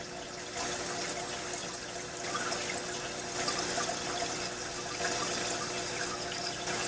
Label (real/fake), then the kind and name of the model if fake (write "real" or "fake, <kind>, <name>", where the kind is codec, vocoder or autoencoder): real